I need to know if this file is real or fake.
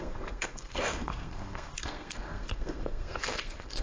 fake